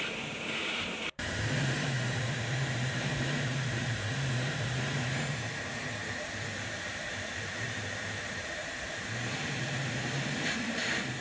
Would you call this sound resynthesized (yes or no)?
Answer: yes